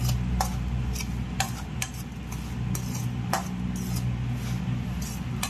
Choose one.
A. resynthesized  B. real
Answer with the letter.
B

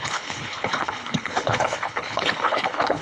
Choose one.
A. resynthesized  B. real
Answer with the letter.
A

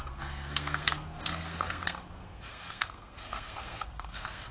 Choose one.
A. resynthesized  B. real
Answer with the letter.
A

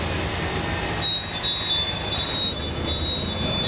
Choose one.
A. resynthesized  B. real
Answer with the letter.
B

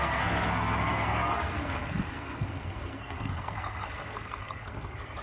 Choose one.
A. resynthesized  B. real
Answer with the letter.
A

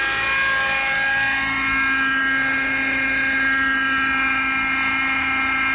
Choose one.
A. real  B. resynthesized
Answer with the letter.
A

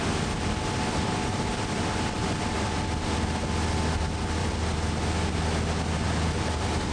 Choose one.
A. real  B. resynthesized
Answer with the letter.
A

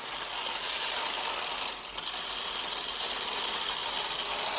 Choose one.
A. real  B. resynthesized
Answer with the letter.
A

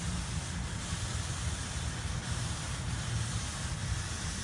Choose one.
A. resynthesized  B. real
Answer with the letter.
A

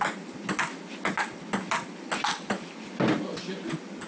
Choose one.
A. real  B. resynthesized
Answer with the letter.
A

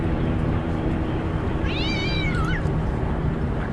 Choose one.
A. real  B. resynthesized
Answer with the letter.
B